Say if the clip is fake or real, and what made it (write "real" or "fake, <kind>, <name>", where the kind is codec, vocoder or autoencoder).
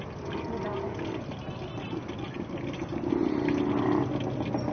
real